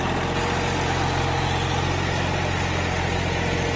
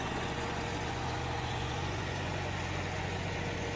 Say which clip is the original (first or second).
first